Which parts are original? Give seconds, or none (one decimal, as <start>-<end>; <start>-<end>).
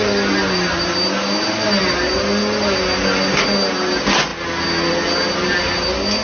0.0-6.2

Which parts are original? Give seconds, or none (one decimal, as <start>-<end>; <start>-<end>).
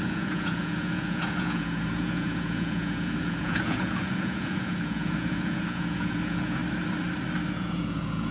6.6-7.5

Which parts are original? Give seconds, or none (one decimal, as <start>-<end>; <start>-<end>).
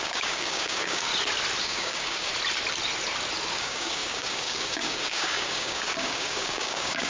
1.1-1.6; 2.3-3.5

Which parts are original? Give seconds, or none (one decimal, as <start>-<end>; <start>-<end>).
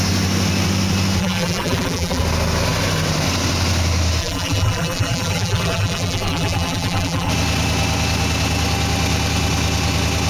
0.0-1.2; 2.2-4.2; 7.3-10.3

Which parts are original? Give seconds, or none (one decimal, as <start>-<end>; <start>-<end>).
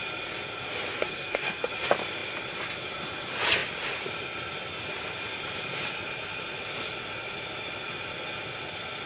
0.0-0.9; 1.7-9.1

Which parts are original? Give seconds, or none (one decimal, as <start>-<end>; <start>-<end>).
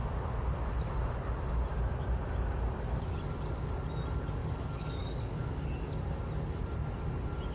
0.0-4.4; 5.6-7.5